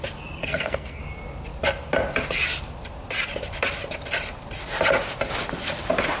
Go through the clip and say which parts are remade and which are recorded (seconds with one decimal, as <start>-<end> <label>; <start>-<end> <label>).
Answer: 0.0-0.4 recorded; 0.4-1.0 remade; 1.0-6.2 recorded